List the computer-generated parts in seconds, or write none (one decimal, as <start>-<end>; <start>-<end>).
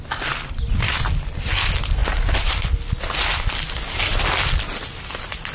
none